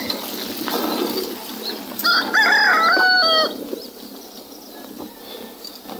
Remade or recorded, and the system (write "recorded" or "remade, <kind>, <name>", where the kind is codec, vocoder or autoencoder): recorded